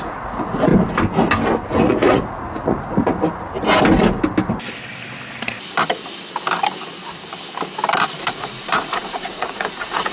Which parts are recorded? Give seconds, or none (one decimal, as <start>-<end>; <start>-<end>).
0.7-1.7; 3.1-8.2